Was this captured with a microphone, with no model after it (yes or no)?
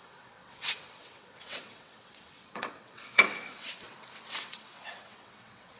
no